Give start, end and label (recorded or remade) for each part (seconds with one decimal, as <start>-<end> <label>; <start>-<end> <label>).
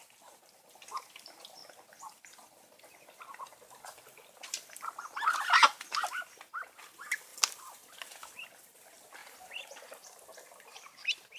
0.0-7.3 remade; 7.3-8.5 recorded; 8.5-9.2 remade; 9.2-9.9 recorded; 9.9-11.4 remade